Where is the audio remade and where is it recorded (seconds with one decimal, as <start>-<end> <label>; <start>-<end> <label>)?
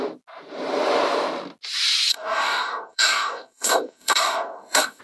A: 0.0-2.1 recorded; 2.1-5.0 remade